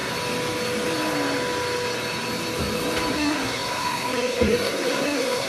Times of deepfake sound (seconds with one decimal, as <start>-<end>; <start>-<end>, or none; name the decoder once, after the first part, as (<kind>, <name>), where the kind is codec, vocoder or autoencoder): 3.1-5.5 (codec, SNAC)